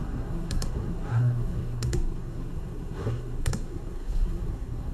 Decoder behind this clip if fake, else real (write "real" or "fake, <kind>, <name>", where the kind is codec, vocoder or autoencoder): fake, codec, SNAC